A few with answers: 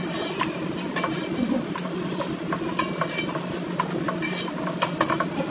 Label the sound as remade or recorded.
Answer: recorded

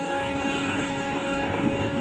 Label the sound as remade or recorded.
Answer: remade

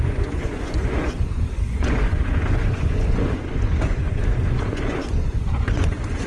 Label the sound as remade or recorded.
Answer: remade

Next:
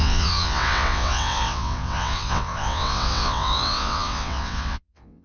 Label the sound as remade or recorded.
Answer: remade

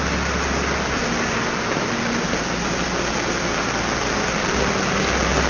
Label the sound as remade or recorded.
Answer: recorded